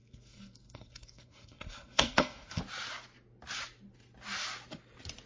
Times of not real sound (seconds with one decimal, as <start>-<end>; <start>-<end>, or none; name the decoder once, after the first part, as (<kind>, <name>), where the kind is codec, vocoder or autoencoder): 0.0-2.6 (codec, SNAC)